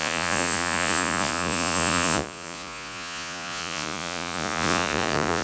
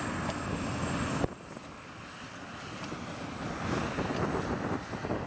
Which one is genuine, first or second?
second